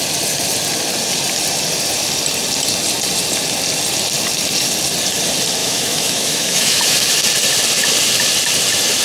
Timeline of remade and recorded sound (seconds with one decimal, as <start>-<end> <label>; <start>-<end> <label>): 0.0-5.6 recorded; 5.6-7.1 remade; 7.1-9.0 recorded